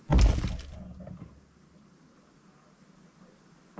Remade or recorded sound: recorded